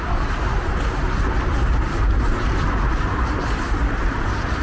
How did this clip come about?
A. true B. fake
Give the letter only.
B